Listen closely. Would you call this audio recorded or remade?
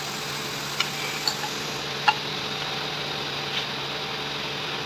recorded